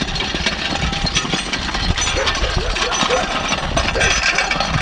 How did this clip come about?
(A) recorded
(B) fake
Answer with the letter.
A